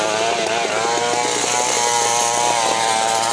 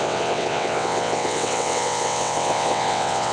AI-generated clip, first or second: second